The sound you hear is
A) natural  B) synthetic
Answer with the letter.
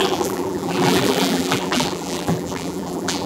B